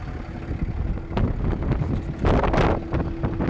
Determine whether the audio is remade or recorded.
recorded